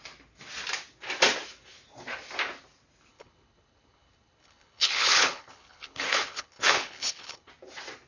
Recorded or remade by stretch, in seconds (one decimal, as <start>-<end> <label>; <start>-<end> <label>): 0.0-3.1 recorded; 3.1-7.5 remade; 7.5-8.1 recorded